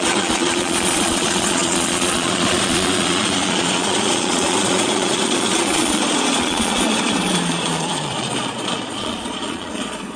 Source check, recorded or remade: remade